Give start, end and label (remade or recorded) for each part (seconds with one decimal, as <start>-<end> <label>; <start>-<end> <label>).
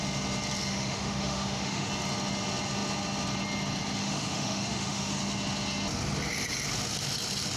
0.0-0.7 recorded; 0.7-1.9 remade; 1.9-4.0 recorded; 4.0-5.1 remade; 5.1-7.6 recorded